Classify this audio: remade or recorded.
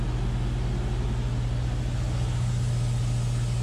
recorded